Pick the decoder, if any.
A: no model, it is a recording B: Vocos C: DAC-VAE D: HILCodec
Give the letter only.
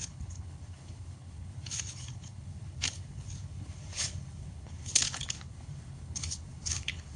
D